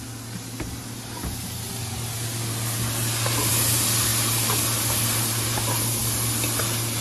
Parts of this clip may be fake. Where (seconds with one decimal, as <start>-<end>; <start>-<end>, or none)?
none